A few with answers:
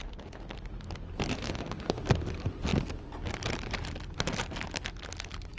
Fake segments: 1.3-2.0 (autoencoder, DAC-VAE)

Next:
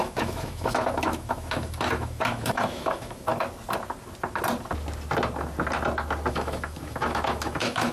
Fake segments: 0.0-3.3 (autoencoder, DAC-VAE); 6.3-7.9

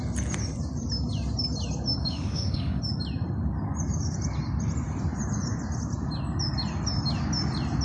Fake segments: 2.0-2.8 (autoencoder, DAC-VAE)

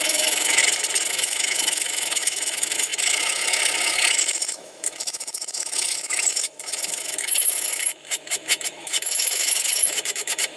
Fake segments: 0.0-0.6 (autoencoder, DAC-VAE); 1.1-10.6